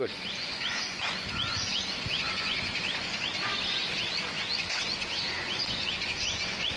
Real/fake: fake